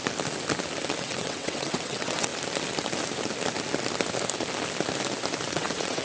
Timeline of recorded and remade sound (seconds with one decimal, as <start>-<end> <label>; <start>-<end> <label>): 0.0-1.0 recorded; 1.0-2.3 remade; 2.3-5.5 recorded; 5.5-6.0 remade